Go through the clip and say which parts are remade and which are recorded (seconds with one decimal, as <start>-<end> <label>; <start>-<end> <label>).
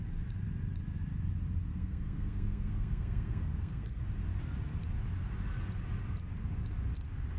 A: 0.0-1.7 recorded; 1.7-4.0 remade; 4.0-7.4 recorded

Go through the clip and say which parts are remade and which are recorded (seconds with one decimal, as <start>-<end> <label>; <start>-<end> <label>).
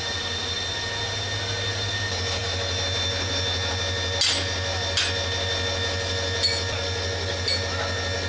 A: 0.0-8.3 recorded